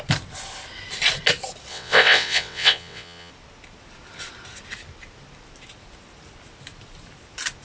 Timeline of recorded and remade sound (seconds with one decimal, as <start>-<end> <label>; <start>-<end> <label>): 0.0-1.7 recorded; 1.7-3.3 remade; 3.3-7.6 recorded